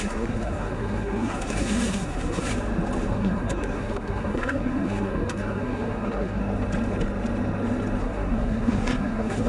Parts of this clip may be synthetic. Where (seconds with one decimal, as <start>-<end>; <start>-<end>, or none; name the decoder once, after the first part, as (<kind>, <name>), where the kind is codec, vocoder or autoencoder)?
0.0-2.5 (codec, SNAC); 3.1-6.4; 8.0-9.5